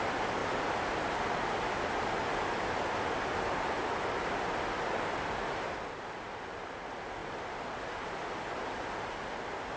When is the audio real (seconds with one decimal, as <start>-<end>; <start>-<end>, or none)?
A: 0.0-9.8